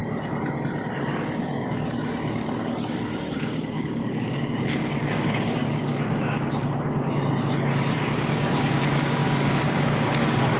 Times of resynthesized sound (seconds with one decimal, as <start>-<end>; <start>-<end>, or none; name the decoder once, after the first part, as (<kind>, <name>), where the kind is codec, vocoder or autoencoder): 1.2-10.6 (codec, DAC)